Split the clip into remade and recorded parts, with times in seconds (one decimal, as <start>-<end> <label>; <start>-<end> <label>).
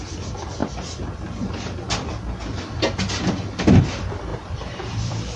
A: 0.0-0.6 remade; 0.6-3.8 recorded; 3.8-5.4 remade